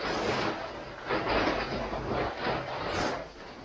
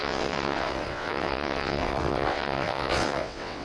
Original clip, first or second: first